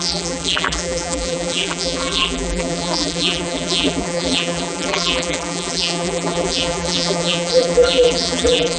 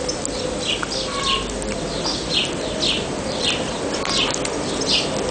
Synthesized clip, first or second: first